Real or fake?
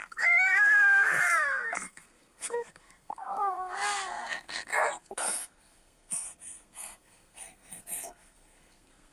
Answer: fake